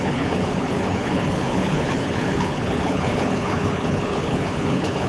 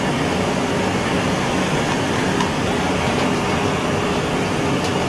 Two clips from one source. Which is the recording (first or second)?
second